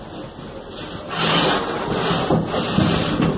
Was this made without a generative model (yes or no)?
yes